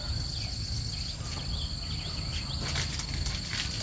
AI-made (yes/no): no